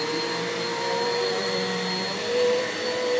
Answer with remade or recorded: remade